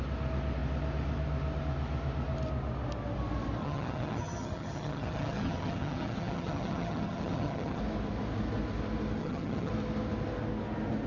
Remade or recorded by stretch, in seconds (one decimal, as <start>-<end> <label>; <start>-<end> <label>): 0.0-3.6 recorded; 3.6-7.8 remade; 7.8-9.2 recorded; 9.2-9.7 remade; 9.7-11.1 recorded